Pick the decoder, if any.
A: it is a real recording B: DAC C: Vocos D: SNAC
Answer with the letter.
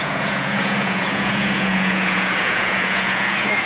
C